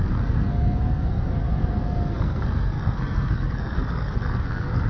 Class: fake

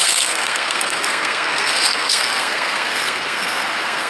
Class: fake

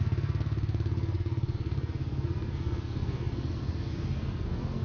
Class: fake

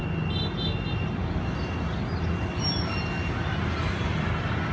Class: real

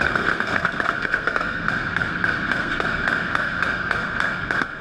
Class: fake